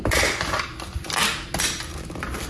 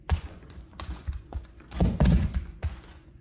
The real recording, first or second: first